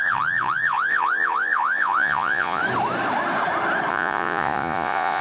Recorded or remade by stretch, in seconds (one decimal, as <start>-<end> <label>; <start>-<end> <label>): 0.0-2.6 remade; 2.6-3.9 recorded; 3.9-5.2 remade

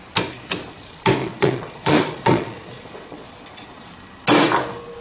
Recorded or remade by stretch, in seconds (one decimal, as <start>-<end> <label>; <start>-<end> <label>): 0.0-1.2 recorded; 1.2-3.9 remade; 3.9-5.0 recorded